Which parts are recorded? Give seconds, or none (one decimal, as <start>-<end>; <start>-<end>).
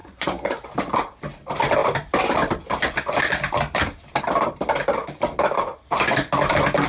0.7-6.9